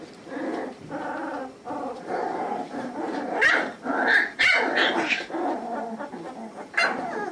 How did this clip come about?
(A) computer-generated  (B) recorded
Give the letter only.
A